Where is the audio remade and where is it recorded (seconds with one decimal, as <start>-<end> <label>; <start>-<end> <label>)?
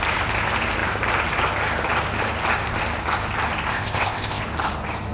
0.0-3.7 recorded; 3.7-4.4 remade; 4.4-5.1 recorded